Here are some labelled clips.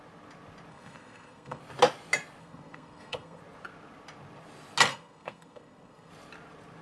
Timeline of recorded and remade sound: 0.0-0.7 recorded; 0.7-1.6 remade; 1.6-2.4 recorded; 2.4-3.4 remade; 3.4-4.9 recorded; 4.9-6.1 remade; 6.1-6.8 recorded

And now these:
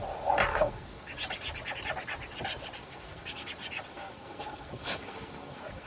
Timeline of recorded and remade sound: 0.0-0.5 recorded; 0.5-1.1 remade; 1.1-2.8 recorded; 2.8-3.5 remade; 3.5-3.9 recorded; 3.9-5.9 remade

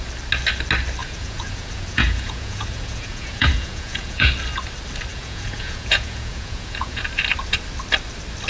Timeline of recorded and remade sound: 0.0-1.0 recorded; 1.0-4.3 remade; 4.3-5.1 recorded; 5.1-7.0 remade; 7.0-8.5 recorded

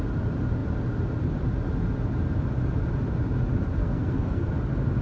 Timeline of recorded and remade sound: 0.0-3.8 recorded; 3.8-4.5 remade; 4.5-5.0 recorded

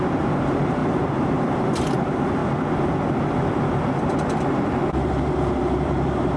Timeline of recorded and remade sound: 0.0-2.4 remade; 2.4-4.9 recorded; 4.9-6.4 remade